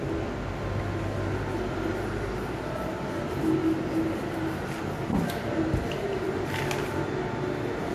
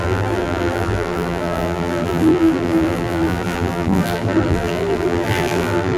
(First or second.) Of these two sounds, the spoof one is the second